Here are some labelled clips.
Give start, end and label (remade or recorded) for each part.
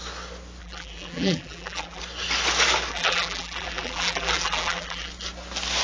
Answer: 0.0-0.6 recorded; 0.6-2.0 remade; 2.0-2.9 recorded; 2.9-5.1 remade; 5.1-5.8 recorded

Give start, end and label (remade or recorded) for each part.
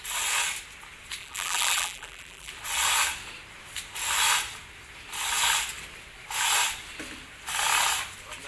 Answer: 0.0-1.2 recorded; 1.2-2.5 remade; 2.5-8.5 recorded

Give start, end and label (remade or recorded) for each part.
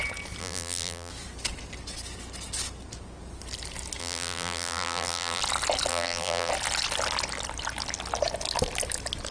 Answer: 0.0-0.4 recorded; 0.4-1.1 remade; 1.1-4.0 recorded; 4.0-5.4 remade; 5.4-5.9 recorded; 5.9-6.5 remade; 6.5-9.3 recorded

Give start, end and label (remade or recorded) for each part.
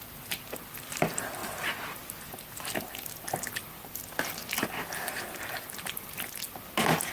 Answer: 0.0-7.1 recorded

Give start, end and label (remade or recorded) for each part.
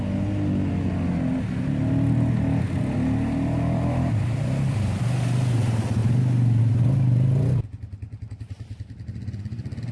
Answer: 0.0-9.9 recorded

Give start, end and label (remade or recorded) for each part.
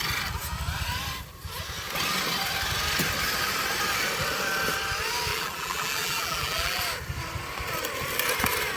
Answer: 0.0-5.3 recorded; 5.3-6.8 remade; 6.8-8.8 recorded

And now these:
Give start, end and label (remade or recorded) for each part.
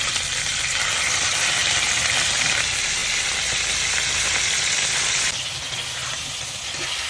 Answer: 0.0-3.0 remade; 3.0-3.7 recorded; 3.7-7.1 remade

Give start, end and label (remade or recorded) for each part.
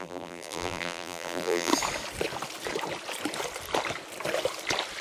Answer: 0.0-1.7 remade; 1.7-5.0 recorded